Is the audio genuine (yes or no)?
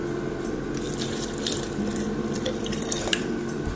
no